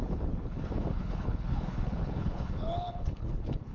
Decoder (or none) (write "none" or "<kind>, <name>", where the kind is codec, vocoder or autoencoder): codec, HILCodec